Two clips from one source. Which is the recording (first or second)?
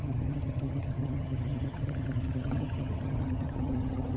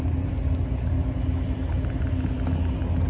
second